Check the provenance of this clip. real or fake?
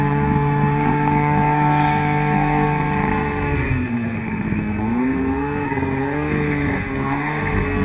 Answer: fake